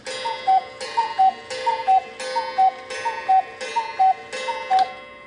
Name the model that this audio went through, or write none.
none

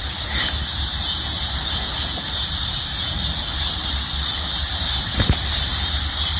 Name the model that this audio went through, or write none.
vocoder, BigVGAN v2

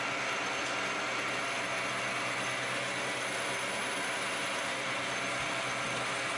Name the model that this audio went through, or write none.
none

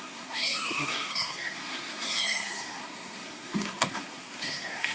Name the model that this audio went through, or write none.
codec, SNAC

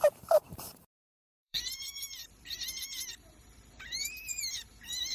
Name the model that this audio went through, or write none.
vocoder, BigVGAN v2